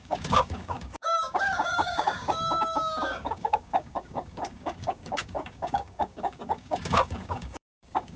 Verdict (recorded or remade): remade